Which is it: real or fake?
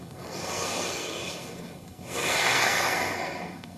fake